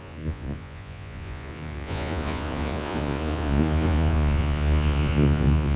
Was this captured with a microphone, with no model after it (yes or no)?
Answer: no